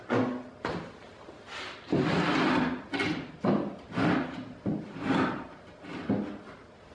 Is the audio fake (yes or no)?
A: no